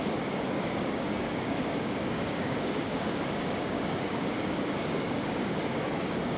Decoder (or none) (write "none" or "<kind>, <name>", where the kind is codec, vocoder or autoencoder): codec, DAC